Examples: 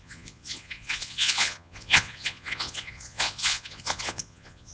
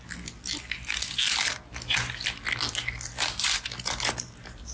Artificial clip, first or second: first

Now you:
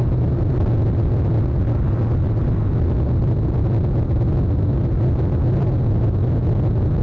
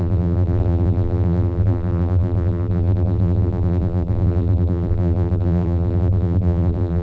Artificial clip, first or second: second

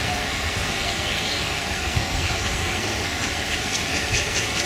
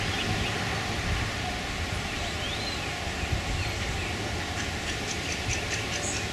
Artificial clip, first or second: first